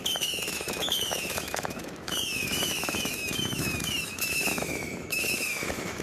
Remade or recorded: remade